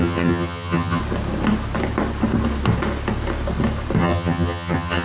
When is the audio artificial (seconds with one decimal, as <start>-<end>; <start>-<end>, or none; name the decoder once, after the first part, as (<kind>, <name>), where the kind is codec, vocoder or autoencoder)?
0.0-1.0 (vocoder, HiFi-GAN); 4.0-5.0